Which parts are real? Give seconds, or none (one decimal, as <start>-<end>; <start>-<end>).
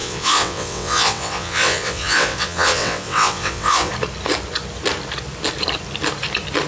3.9-6.7